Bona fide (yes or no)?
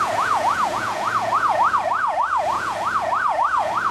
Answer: no